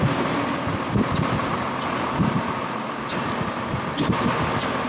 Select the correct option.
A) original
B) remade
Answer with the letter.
A